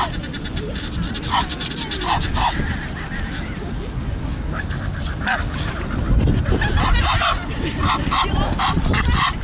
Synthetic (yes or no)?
no